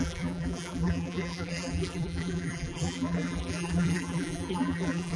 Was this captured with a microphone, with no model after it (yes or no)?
no